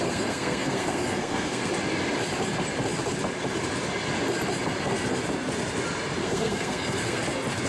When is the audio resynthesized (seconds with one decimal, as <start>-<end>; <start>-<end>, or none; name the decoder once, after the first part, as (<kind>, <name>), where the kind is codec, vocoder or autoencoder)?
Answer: 0.0-1.7 (codec, SNAC); 6.2-7.2